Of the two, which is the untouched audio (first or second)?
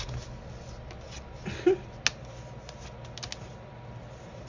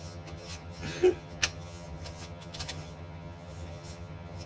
first